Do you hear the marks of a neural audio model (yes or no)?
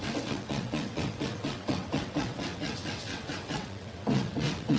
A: yes